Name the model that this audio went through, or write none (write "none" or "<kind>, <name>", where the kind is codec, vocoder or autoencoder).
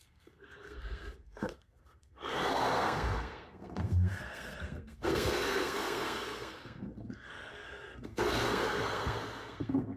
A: codec, SNAC